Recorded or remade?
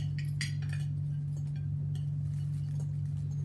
recorded